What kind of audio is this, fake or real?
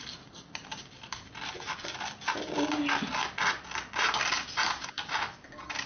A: real